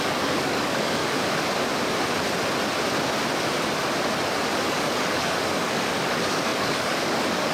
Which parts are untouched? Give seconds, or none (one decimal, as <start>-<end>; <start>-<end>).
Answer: 1.0-4.7